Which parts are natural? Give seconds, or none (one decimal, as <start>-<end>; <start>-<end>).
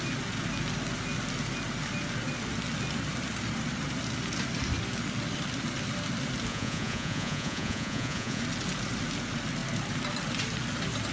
0.0-6.5; 8.4-11.1